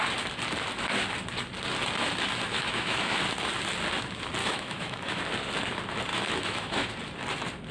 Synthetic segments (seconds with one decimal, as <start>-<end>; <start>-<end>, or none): 2.5-3.2; 4.4-5.2; 6.1-6.9